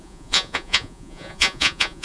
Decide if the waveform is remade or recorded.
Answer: remade